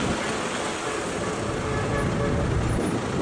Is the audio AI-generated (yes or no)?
no